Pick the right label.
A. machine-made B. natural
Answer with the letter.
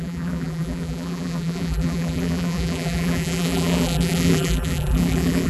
A